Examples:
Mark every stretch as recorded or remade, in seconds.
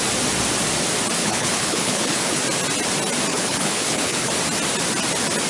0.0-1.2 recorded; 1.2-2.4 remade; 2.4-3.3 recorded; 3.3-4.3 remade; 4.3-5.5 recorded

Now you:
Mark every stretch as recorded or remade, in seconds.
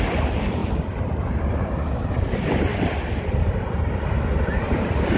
0.0-5.2 recorded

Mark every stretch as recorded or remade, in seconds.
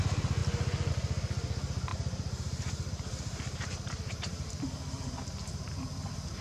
0.0-0.4 recorded; 0.4-0.9 remade; 0.9-1.9 recorded; 1.9-5.7 remade; 5.7-6.4 recorded